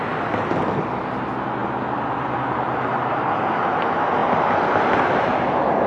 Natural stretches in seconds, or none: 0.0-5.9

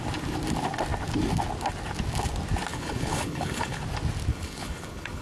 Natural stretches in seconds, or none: 0.0-2.7; 3.8-4.3